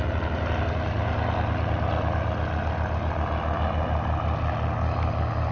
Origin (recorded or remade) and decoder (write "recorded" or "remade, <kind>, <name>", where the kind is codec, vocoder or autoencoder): recorded